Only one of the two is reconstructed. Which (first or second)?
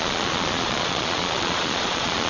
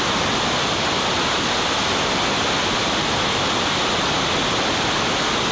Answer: first